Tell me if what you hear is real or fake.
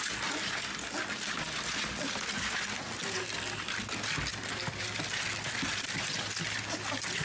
real